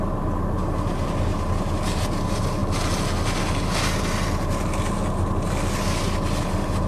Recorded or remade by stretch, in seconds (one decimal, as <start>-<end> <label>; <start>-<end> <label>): 0.0-6.9 recorded